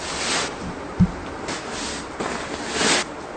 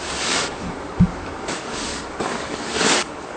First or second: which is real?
first